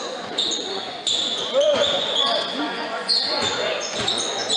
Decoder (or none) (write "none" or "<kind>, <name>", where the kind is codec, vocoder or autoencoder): vocoder, Vocos